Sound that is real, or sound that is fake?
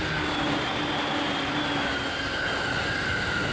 real